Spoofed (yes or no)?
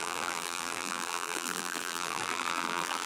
yes